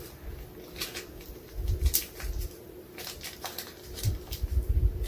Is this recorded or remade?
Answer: recorded